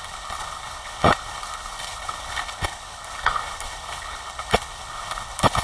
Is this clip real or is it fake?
fake